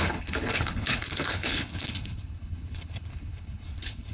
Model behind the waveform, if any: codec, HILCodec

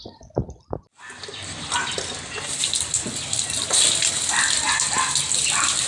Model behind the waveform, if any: none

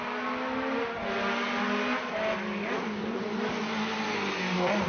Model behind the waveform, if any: none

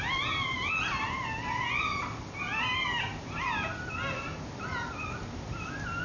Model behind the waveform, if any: none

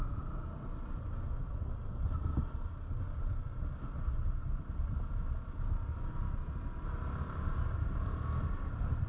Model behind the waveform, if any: none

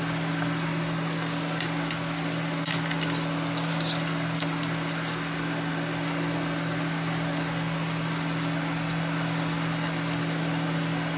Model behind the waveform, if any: none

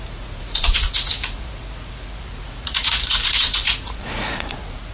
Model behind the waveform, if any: vocoder, Vocos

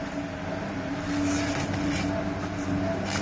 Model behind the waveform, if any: none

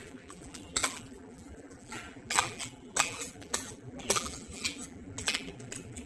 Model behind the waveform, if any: vocoder, BigVGAN v2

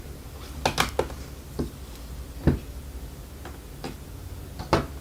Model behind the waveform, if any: none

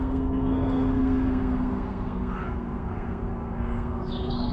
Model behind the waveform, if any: codec, SNAC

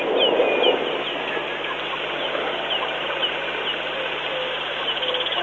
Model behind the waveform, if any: none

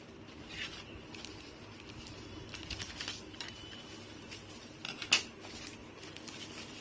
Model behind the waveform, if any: none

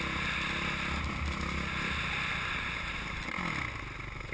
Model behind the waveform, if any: none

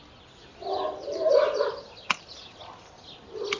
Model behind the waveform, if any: none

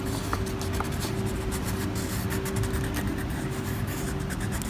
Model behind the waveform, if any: none